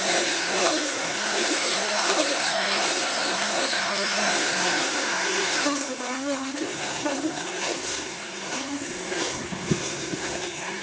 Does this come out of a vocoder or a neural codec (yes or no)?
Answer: yes